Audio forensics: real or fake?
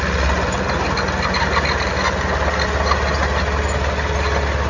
real